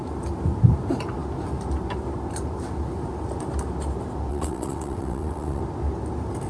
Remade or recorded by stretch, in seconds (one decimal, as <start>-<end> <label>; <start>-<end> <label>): 0.0-4.3 recorded; 4.3-5.6 remade; 5.6-6.5 recorded